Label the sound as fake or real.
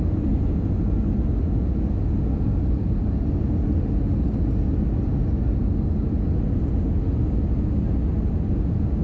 real